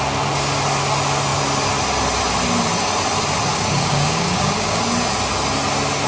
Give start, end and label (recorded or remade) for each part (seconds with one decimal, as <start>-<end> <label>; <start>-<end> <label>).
0.0-3.5 recorded; 3.5-4.8 remade; 4.8-6.1 recorded